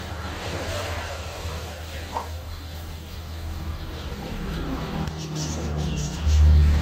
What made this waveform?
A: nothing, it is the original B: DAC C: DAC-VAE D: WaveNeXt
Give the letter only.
B